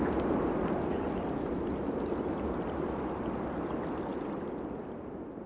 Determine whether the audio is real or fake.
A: real